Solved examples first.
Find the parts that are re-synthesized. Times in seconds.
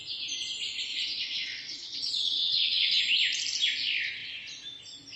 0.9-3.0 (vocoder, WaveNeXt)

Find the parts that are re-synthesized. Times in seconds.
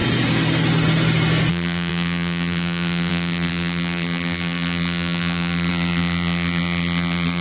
1.5-7.4 (vocoder, BigVGAN v2)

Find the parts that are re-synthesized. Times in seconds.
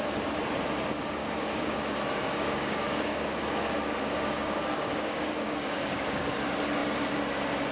1.2-1.7 (codec, DAC); 2.2-6.3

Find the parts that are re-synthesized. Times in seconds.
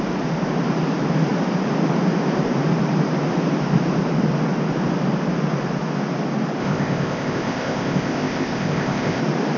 6.6-9.2 (codec, ZipCodec)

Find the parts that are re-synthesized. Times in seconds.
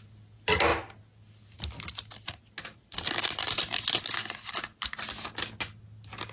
none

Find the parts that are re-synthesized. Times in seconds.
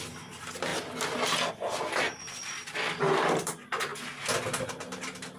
0.0-0.7 (vocoder, BigVGAN v2); 1.5-3.9; 4.7-5.4